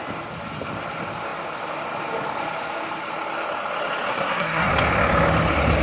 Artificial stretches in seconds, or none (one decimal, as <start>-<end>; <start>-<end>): 4.1-4.7